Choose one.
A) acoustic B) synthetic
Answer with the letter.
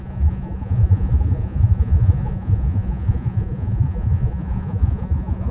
B